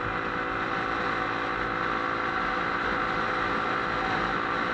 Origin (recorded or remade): recorded